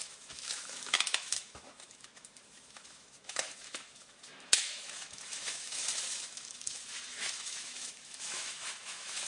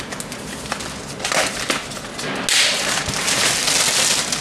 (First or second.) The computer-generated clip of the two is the first